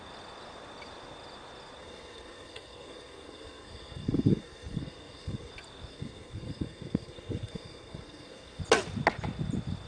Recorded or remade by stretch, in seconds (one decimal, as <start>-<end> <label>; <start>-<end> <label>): 0.0-1.8 recorded; 1.8-5.5 remade; 5.5-5.9 recorded; 5.9-8.6 remade; 8.6-9.9 recorded